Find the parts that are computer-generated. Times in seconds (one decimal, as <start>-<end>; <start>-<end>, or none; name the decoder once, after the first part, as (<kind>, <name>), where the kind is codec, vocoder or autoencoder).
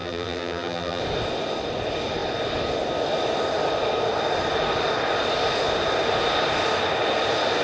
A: 0.0-1.0 (vocoder, BigVGAN v2)